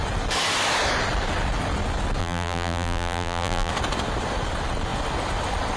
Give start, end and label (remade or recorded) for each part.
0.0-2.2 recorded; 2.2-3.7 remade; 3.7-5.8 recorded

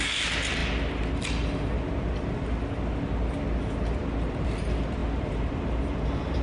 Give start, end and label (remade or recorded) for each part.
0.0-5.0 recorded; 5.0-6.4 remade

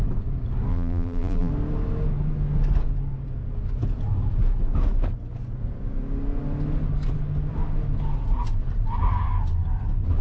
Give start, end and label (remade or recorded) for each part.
0.0-0.7 recorded; 0.7-1.5 remade; 1.5-10.2 recorded

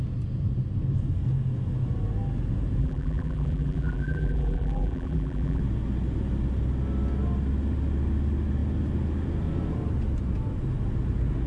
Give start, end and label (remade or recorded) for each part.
0.0-2.8 recorded; 2.8-5.6 remade; 5.6-11.5 recorded

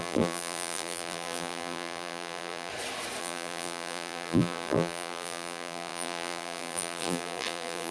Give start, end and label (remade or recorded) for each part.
0.0-2.7 remade; 2.7-3.2 recorded; 3.2-7.9 remade

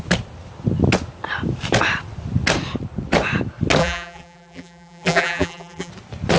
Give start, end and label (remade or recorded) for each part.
0.0-3.8 recorded; 3.8-5.9 remade; 5.9-6.4 recorded